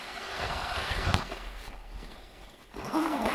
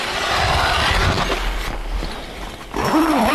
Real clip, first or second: second